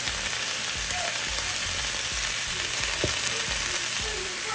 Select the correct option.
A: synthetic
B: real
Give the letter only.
B